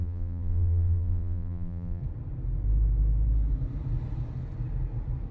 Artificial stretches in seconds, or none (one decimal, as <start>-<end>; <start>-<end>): 0.0-2.0